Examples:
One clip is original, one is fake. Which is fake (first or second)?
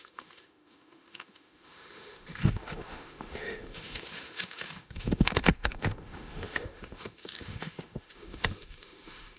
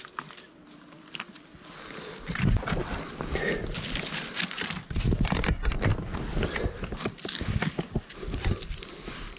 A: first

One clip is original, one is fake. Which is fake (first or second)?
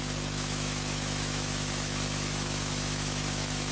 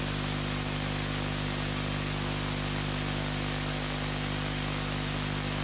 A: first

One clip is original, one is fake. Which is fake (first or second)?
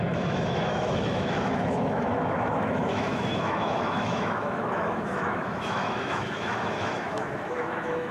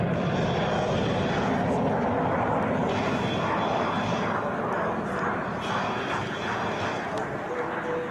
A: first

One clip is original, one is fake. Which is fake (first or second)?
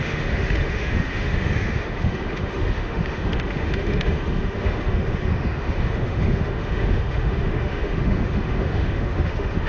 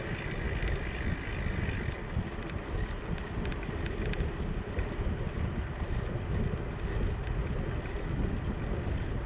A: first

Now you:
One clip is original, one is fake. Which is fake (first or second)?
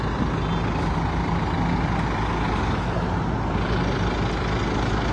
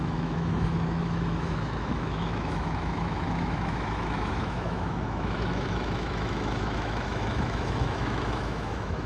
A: second